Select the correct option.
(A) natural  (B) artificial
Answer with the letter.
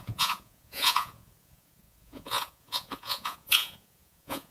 B